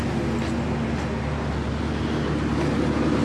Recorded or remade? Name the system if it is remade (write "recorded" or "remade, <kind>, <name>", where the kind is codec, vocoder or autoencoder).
recorded